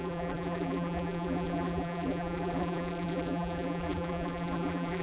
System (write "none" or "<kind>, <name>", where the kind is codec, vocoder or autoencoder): vocoder, BigVGAN v2